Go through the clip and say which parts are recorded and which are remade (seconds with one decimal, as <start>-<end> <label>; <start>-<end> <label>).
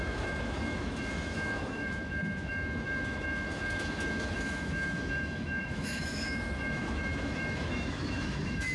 0.0-8.7 remade